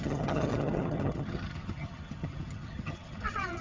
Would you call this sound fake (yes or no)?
yes